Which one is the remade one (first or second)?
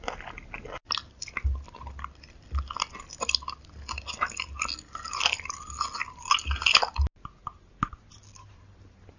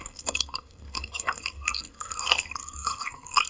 second